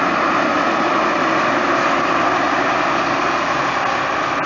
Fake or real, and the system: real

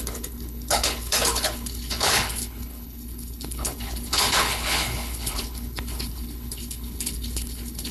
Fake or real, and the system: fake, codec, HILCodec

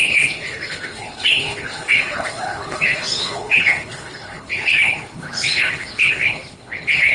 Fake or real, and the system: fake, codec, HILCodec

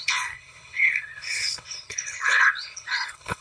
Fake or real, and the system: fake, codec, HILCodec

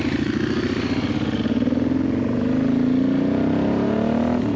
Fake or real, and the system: real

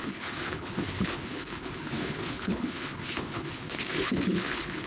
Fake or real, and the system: fake, codec, HILCodec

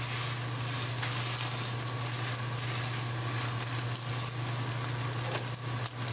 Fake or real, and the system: real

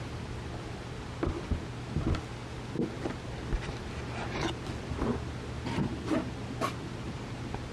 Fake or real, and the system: real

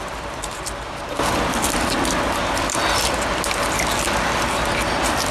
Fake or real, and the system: real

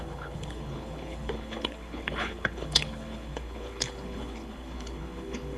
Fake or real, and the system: fake, codec, HILCodec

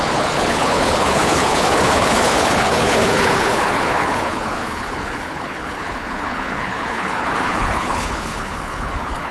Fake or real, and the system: fake, codec, HILCodec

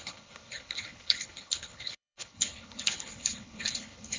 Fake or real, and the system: fake, codec, HILCodec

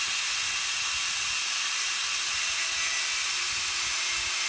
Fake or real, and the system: real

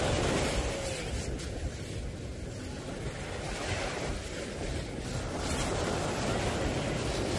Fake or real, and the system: real